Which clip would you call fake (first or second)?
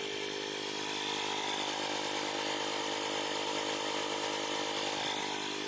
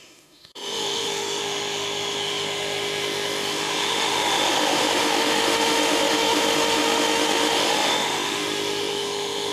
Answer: second